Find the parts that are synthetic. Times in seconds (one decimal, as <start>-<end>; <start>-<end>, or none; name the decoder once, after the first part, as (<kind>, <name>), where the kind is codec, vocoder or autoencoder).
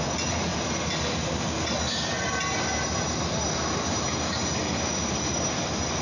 none